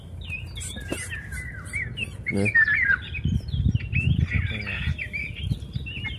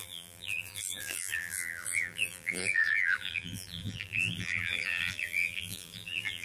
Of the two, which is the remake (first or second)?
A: second